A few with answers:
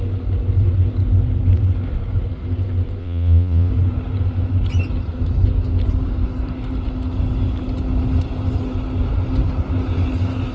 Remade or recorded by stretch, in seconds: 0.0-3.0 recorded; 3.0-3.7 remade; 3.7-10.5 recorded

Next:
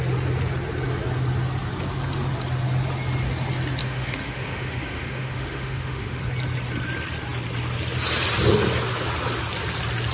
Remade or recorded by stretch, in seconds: 0.0-3.8 recorded; 3.8-6.2 remade; 6.2-10.1 recorded

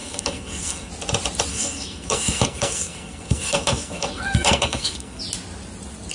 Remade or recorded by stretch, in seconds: 0.0-0.9 remade; 0.9-1.5 recorded; 1.5-5.2 remade; 5.2-6.1 recorded

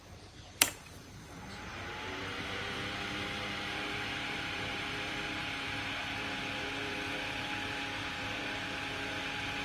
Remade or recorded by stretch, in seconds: 0.0-9.6 remade

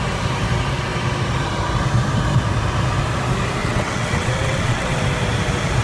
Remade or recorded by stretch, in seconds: 0.0-3.6 recorded; 3.6-5.0 remade; 5.0-5.8 recorded

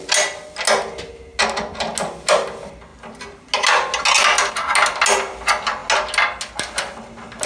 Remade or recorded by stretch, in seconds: 0.0-7.5 recorded

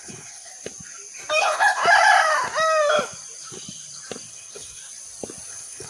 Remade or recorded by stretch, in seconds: 0.0-0.5 remade; 0.5-1.4 recorded; 1.4-1.8 remade; 1.8-4.3 recorded; 4.3-4.8 remade; 4.8-5.5 recorded; 5.5-5.9 remade

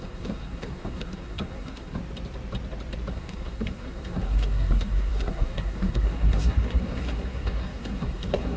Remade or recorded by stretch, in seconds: 0.0-2.0 remade; 2.0-3.1 recorded; 3.1-8.6 remade